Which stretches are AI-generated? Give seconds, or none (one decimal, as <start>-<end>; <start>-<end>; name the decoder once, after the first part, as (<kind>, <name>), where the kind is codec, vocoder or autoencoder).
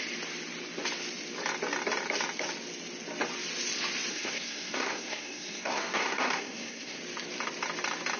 4.1-7.0 (codec, SNAC)